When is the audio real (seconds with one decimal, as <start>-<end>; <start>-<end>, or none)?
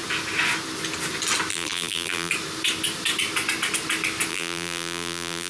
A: 0.0-1.5; 2.3-4.3